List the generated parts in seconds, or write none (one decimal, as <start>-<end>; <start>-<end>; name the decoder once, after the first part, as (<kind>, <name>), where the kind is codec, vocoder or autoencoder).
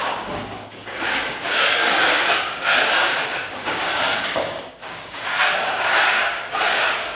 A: 0.0-7.2 (codec, DAC)